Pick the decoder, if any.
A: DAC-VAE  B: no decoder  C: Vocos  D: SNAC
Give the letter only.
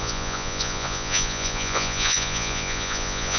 C